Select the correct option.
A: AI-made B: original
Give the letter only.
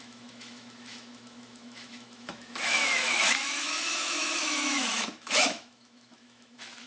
A